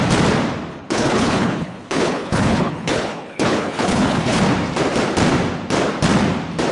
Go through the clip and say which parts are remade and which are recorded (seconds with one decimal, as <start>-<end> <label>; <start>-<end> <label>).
0.0-0.7 recorded; 0.7-4.4 remade; 4.4-6.7 recorded